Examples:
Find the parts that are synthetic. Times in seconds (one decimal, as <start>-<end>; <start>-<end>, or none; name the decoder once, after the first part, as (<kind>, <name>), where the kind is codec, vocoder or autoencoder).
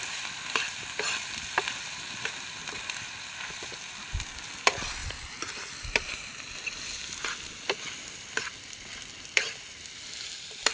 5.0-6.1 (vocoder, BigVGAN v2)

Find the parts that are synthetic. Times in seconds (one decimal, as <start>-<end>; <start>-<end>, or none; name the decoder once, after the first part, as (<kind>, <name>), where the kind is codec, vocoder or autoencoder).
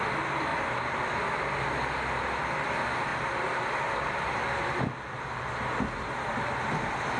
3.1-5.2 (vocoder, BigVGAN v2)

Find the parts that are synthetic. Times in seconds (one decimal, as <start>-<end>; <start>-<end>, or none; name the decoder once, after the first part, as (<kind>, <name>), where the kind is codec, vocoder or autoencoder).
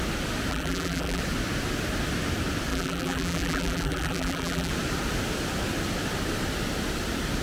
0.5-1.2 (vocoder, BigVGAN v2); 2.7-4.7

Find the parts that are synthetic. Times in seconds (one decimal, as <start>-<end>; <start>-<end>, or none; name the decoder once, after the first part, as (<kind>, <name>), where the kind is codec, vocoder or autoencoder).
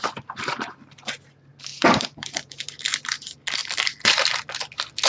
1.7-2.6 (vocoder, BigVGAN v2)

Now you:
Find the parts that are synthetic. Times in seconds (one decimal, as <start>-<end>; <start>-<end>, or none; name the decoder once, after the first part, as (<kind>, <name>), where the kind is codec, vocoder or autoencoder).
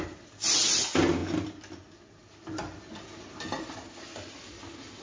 none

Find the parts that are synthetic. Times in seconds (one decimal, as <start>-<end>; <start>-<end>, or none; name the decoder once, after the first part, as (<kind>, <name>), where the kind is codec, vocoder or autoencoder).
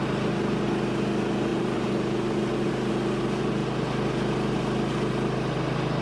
1.5-2.9 (vocoder, BigVGAN v2)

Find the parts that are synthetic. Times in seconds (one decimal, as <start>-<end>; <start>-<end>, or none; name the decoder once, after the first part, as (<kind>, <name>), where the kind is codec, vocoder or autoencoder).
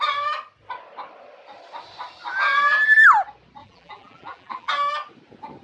3.6-4.7 (vocoder, BigVGAN v2)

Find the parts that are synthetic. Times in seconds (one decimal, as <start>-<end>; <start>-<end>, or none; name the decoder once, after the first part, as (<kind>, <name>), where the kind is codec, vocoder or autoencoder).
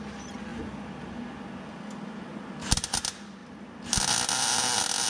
none